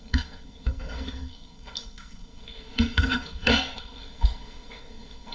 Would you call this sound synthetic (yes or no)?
yes